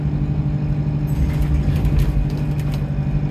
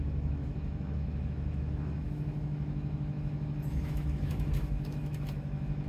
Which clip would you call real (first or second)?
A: first